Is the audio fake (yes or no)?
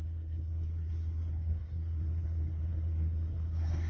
yes